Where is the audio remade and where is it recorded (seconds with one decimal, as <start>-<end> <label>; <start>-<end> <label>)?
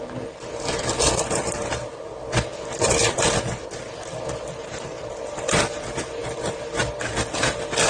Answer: 0.0-7.9 recorded